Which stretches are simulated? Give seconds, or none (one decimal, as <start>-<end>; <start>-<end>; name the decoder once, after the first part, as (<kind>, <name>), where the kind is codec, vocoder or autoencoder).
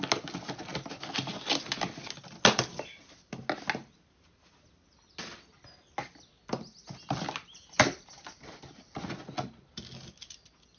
none